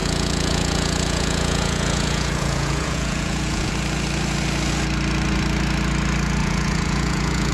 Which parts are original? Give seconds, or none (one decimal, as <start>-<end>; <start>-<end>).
3.7-6.4